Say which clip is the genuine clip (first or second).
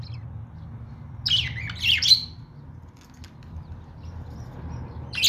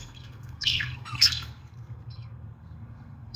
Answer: first